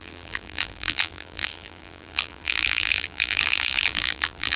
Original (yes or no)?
no